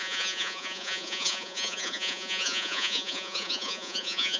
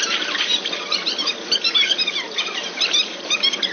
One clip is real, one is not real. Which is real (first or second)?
second